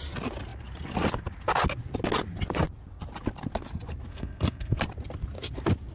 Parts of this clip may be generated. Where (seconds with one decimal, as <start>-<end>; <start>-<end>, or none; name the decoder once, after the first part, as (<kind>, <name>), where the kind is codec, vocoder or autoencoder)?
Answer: 4.1-4.8 (codec, SNAC)